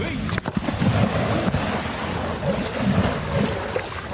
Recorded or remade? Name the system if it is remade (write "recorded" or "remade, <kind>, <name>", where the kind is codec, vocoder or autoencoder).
recorded